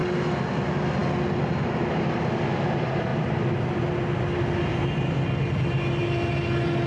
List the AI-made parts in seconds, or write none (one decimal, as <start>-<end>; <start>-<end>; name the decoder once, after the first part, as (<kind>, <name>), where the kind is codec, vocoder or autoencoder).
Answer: none